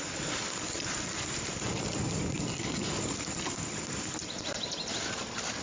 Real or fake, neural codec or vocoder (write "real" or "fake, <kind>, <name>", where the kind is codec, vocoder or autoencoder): fake, vocoder, BigVGAN v2